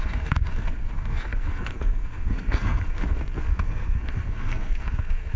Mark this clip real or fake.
fake